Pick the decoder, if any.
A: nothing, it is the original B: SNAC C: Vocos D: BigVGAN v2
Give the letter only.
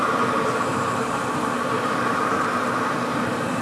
D